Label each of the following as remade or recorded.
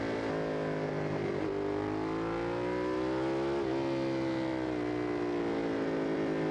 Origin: recorded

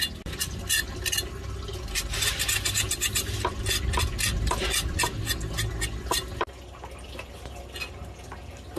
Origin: recorded